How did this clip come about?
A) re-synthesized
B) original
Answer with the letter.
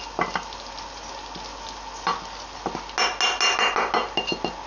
B